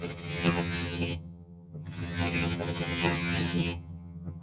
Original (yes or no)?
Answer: no